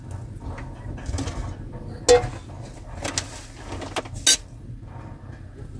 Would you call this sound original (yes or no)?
yes